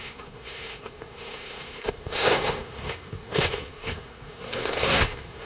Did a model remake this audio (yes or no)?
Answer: yes